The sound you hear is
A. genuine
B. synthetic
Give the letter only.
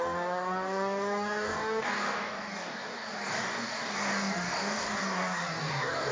B